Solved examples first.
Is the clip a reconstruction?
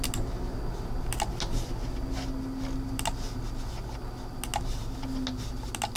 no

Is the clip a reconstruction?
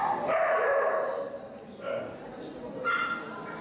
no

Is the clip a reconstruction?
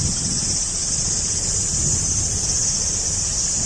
no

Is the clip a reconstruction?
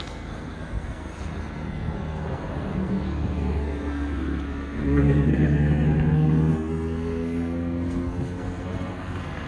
yes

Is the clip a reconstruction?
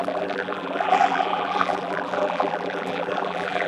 yes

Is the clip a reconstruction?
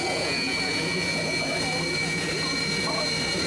yes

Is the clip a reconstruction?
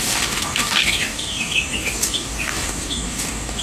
yes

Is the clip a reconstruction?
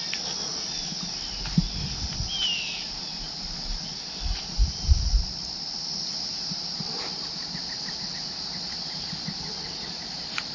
no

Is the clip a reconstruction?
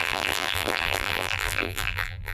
yes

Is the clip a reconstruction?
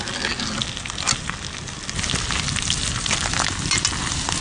no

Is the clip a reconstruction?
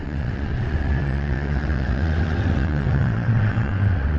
yes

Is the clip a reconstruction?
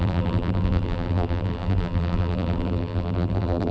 yes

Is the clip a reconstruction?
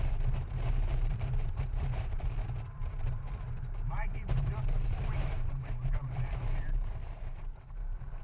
yes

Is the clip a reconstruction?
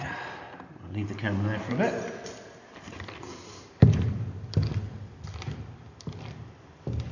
yes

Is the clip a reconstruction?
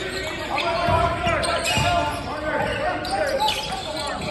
no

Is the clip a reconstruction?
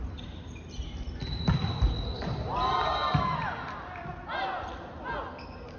no